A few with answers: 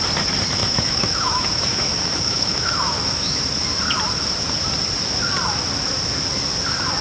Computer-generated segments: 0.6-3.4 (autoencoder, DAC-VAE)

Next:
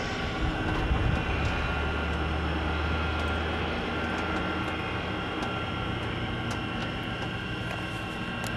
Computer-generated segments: none

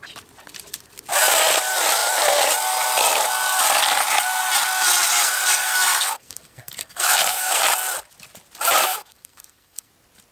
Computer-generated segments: 5.2-7.6 (codec, SNAC); 8.8-9.9

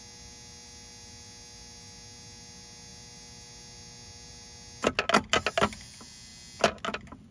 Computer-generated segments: none

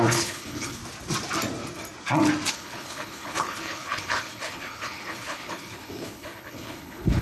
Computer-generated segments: 0.0-0.8 (codec, HILCodec); 2.5-7.2

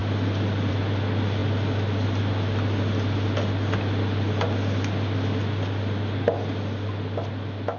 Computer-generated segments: none

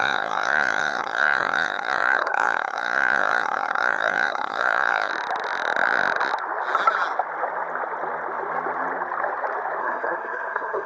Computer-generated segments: 0.0-5.1 (codec, SNAC); 9.8-10.9

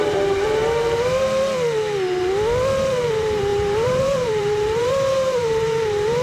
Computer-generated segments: 0.0-0.6 (vocoder, BigVGAN v2); 3.1-6.2